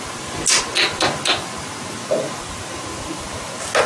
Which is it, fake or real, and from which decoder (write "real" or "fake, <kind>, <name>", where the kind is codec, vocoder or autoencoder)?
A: real